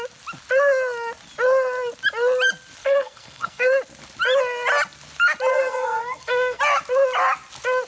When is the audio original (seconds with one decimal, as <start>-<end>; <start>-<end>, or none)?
0.0-2.8; 3.7-5.5; 6.6-7.9